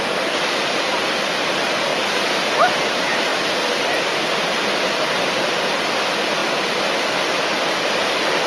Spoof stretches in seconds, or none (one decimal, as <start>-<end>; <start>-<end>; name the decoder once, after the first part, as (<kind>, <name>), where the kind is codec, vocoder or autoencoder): none